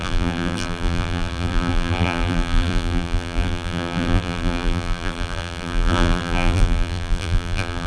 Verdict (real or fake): fake